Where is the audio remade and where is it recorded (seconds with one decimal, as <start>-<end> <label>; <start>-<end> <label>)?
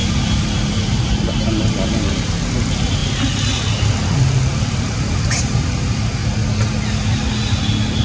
0.0-3.0 remade; 3.0-4.6 recorded; 4.6-6.2 remade; 6.2-8.0 recorded